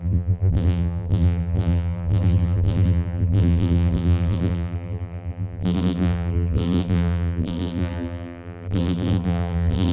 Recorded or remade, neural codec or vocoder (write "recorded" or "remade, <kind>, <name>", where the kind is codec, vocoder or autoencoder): remade, vocoder, BigVGAN v2